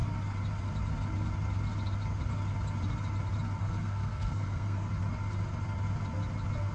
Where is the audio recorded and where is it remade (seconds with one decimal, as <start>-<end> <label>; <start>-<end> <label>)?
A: 0.0-3.6 recorded; 3.6-4.9 remade; 4.9-6.7 recorded